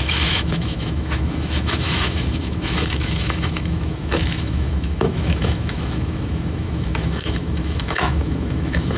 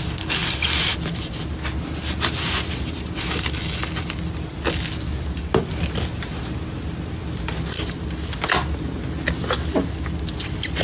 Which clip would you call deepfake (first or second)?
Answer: first